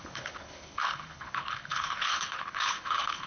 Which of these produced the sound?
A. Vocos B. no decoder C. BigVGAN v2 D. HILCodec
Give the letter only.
D